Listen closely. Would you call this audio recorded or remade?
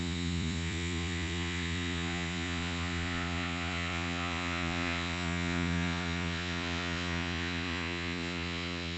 remade